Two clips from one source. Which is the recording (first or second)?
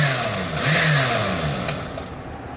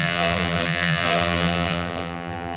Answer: first